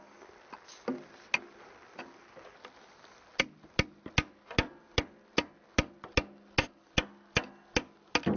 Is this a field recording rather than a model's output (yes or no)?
yes